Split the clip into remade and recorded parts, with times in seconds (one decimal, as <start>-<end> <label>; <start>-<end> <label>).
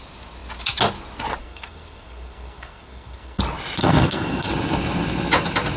0.0-1.4 recorded; 1.4-3.4 remade; 3.4-3.8 recorded; 3.8-4.5 remade; 4.5-5.8 recorded